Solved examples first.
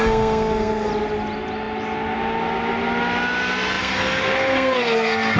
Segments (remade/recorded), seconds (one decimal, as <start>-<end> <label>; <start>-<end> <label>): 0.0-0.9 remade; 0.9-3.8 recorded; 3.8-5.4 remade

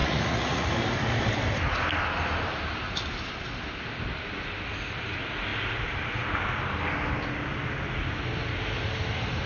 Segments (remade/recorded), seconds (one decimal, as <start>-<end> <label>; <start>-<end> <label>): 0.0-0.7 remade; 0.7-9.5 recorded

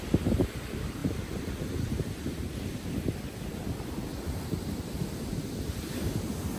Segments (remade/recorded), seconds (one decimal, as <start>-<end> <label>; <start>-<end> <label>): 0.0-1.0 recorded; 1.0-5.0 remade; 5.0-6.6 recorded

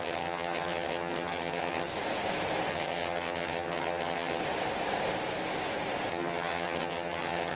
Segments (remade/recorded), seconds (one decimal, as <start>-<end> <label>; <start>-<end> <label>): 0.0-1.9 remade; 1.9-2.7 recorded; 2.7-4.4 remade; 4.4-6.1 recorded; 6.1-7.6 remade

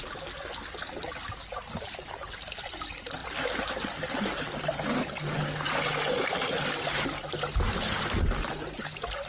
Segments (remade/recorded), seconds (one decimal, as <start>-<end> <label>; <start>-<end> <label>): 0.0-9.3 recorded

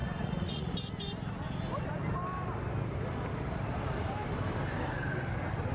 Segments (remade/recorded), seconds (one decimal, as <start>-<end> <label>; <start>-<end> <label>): 0.0-0.7 remade; 0.7-5.7 recorded